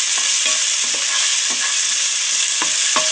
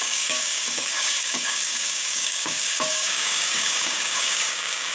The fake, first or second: second